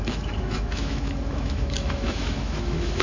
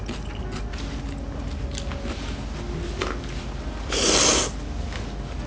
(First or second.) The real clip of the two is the second